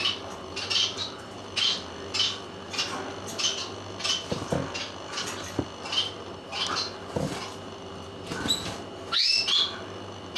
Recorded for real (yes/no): yes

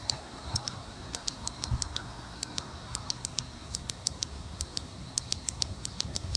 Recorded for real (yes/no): no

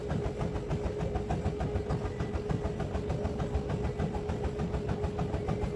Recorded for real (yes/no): yes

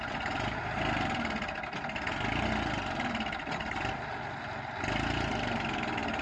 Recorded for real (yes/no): yes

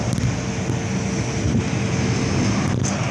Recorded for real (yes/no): yes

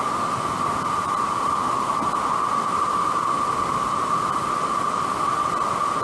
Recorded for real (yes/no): yes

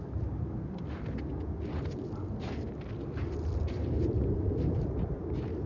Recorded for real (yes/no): yes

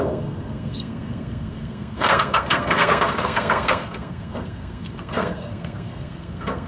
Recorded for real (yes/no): no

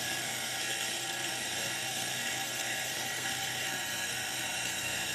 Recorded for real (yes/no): no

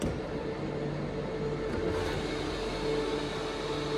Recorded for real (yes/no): yes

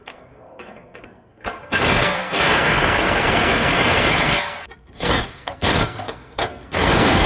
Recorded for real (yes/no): no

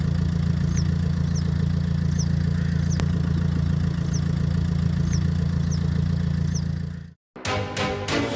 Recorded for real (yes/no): yes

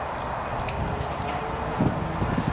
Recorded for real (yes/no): yes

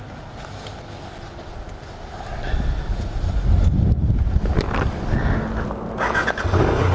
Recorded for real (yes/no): yes